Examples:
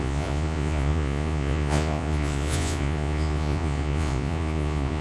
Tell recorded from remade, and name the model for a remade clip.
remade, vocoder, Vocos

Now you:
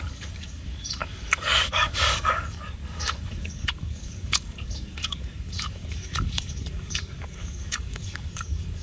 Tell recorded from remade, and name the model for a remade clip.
remade, codec, DAC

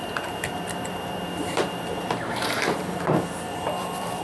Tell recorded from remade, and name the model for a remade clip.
remade, vocoder, BigVGAN v2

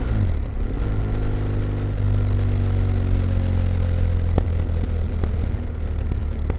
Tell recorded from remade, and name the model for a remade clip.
recorded